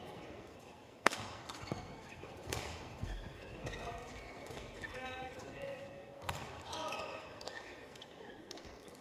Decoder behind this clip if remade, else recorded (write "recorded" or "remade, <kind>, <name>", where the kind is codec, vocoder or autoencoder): remade, codec, SNAC